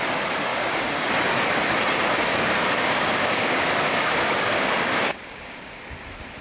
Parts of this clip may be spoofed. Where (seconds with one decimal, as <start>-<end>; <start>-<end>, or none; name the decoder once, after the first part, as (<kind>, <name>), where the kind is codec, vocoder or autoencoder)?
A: 0.5-1.1 (codec, DAC); 2.3-5.8